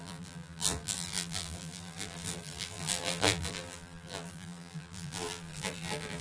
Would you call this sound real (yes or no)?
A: no